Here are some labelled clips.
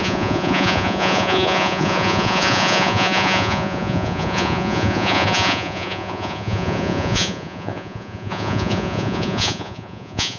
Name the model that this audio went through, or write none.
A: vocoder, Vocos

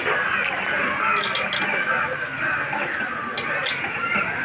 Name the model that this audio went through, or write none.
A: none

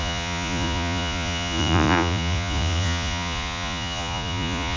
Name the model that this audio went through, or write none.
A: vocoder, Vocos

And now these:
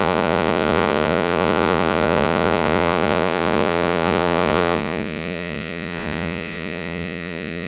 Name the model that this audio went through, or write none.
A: vocoder, Vocos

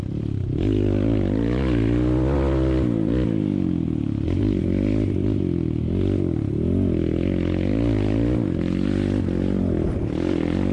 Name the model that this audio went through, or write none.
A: none